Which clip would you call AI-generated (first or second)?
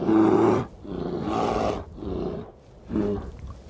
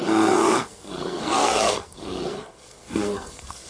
second